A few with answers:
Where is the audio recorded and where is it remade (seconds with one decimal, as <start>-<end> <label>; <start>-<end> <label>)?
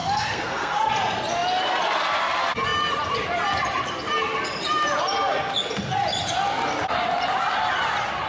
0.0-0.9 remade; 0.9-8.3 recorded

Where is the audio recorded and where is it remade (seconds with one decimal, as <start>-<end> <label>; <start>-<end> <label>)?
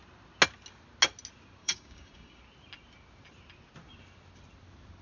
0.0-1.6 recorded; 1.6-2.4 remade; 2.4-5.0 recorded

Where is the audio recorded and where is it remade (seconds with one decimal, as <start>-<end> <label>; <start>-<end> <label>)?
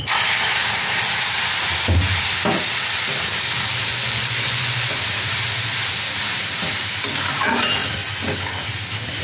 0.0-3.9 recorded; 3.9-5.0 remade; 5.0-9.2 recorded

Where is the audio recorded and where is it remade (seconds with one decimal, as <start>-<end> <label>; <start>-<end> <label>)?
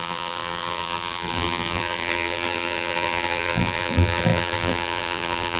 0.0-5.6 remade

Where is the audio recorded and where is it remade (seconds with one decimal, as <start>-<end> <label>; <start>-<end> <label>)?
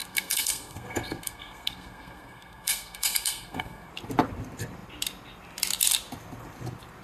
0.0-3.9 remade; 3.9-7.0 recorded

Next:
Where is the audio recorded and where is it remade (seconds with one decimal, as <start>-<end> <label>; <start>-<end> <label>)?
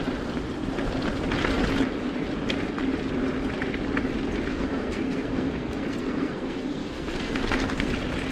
0.0-4.5 recorded; 4.5-7.9 remade; 7.9-8.3 recorded